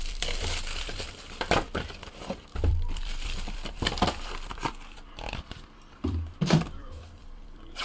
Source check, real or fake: fake